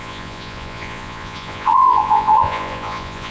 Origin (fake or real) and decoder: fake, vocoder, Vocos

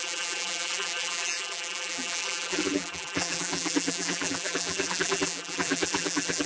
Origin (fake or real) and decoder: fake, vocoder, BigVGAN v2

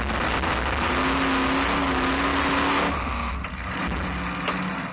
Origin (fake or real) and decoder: real